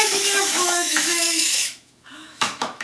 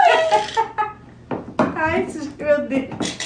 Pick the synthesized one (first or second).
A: first